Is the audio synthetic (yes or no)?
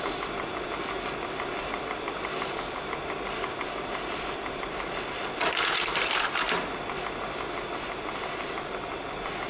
no